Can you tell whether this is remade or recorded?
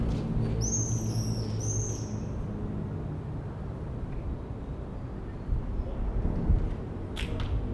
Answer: recorded